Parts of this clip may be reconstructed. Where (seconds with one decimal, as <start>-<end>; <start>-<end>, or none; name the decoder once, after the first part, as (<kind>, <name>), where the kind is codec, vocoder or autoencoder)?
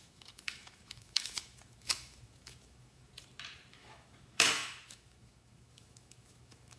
0.0-3.1 (autoencoder, DAC-VAE); 3.7-6.8